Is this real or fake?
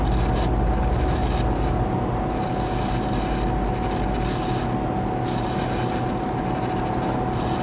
real